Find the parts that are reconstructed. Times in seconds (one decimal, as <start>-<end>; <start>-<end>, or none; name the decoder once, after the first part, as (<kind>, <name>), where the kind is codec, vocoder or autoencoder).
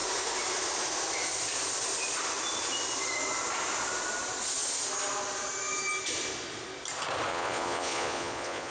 7.3-8.7 (vocoder, Vocos)